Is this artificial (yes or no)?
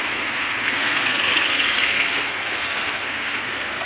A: yes